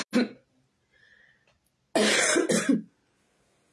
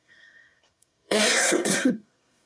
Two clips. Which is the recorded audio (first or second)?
first